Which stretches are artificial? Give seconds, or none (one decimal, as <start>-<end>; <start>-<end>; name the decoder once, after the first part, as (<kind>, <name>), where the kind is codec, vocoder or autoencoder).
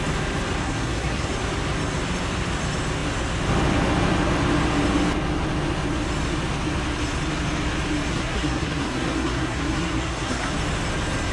0.6-1.3 (codec, SNAC); 8.1-10.5